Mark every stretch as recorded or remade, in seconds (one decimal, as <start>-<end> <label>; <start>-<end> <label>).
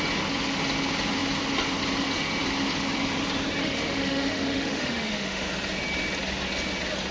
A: 0.0-3.6 recorded; 3.6-5.5 remade; 5.5-7.1 recorded